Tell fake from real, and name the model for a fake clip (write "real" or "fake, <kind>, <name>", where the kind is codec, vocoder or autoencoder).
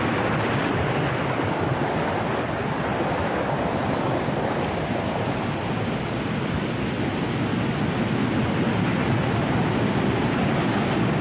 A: real